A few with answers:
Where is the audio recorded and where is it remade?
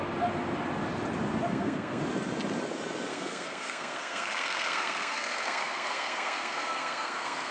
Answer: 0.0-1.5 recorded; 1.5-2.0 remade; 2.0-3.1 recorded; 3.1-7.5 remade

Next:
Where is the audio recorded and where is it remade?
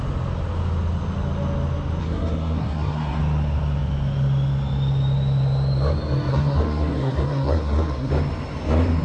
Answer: 0.0-2.0 recorded; 2.0-3.2 remade; 3.2-6.3 recorded; 6.3-8.1 remade; 8.1-9.0 recorded